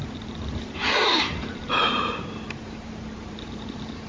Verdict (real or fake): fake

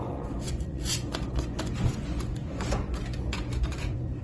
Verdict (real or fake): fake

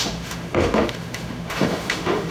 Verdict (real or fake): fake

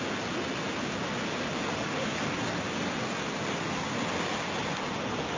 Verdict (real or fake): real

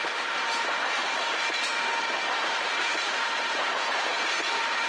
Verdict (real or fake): fake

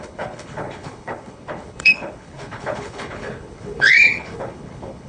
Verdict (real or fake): fake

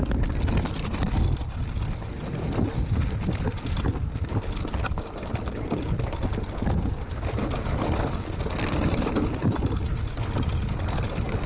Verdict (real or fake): real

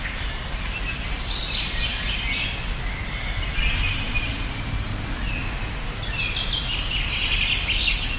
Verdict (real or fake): real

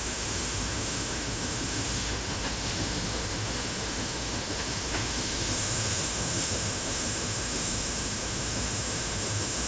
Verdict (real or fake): fake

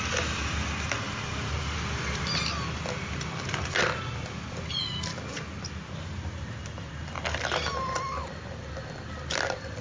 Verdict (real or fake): real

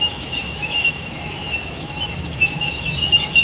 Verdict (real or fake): fake